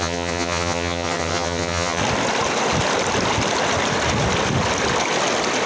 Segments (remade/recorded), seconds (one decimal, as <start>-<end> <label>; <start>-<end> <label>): 0.0-2.0 remade; 2.0-5.7 recorded